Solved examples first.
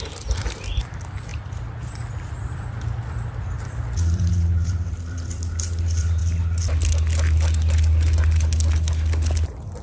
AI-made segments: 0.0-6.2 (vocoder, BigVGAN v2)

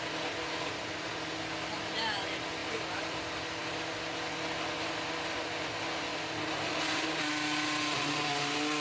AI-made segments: 2.6-3.2 (vocoder, BigVGAN v2); 6.1-7.3

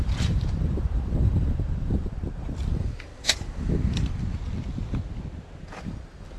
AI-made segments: 0.0-3.1 (vocoder, BigVGAN v2); 5.8-6.4

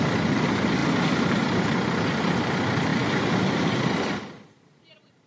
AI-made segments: none